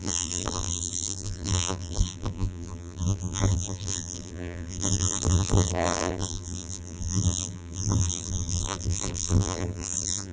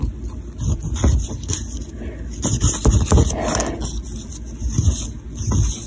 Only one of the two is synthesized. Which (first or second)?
first